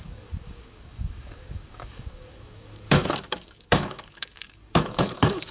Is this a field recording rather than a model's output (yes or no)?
no